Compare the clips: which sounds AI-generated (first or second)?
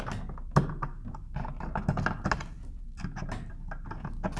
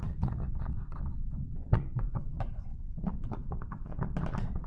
second